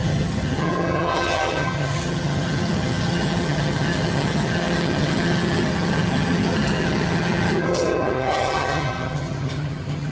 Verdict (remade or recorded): remade